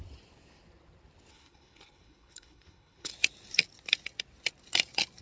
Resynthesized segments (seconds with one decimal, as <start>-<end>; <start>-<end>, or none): 1.3-3.1

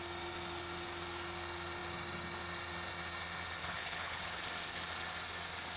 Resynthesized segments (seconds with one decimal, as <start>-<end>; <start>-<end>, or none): 3.6-4.4

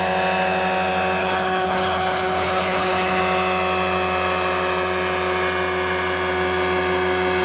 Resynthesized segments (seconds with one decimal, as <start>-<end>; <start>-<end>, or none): 1.2-3.2

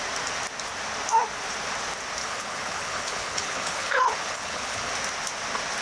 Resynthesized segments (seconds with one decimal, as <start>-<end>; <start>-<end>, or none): 2.2-4.9

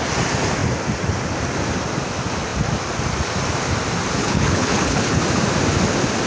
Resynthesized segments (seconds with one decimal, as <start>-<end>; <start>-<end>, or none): 4.2-5.2

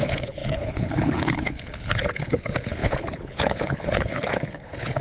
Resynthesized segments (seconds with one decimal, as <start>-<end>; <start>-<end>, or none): 0.0-5.0

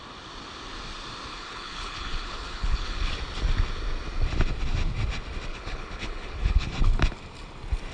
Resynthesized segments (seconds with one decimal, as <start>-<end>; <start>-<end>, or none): 1.3-3.1; 5.5-6.7

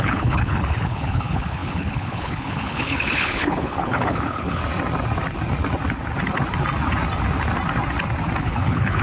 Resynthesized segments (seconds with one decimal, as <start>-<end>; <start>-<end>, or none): 0.0-4.6; 8.4-9.0